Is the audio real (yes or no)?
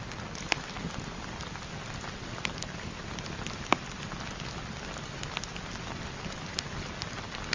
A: yes